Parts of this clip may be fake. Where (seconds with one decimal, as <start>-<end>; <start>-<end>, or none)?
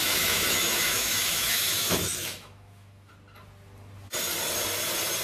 0.0-3.1